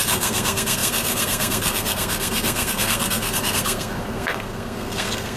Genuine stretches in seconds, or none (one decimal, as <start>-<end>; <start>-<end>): none